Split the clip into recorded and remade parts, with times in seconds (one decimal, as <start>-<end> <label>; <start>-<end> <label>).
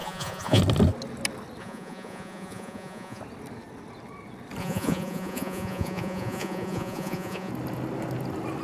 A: 0.0-0.6 remade; 0.6-1.6 recorded; 1.6-3.2 remade; 3.2-4.6 recorded; 4.6-7.5 remade; 7.5-8.6 recorded